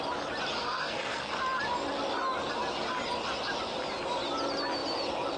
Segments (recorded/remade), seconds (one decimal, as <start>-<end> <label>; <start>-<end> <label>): 0.0-0.6 recorded; 0.6-1.3 remade; 1.3-5.4 recorded